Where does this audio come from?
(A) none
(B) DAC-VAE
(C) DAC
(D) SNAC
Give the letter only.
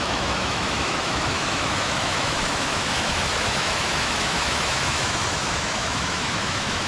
B